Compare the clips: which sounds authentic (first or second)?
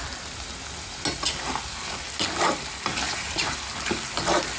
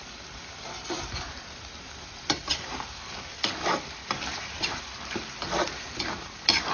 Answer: first